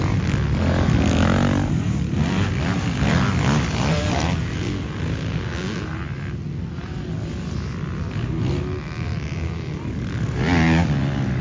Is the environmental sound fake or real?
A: real